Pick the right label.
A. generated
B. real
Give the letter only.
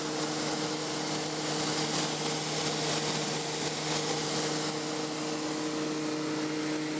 B